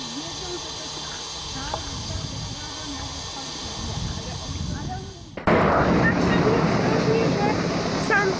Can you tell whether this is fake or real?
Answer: real